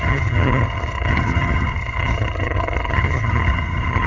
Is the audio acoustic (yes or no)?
no